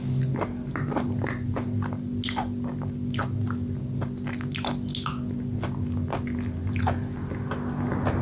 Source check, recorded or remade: recorded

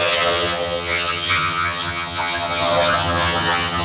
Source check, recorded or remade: remade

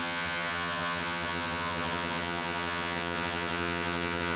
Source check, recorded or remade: remade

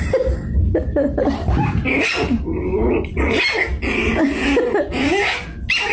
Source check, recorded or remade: recorded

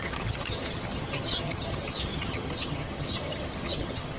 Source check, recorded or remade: remade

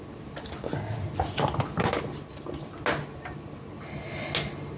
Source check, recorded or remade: recorded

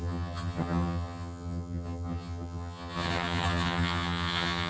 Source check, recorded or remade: remade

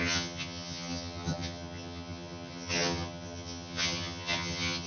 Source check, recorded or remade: remade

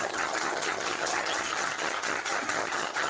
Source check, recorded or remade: remade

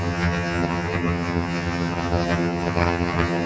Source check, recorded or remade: remade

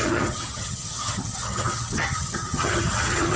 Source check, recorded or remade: remade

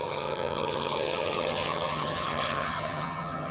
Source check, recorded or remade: remade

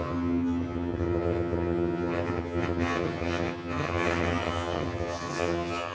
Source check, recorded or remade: remade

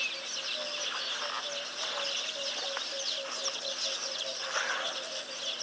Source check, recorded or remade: recorded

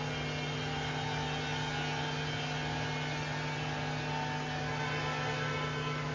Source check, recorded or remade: recorded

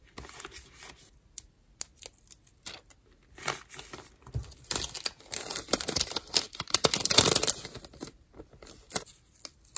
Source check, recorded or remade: recorded